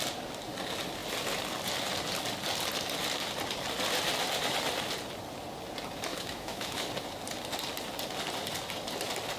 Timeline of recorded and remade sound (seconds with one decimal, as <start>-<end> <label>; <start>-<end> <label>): 0.0-6.1 recorded; 6.1-6.9 remade; 6.9-9.4 recorded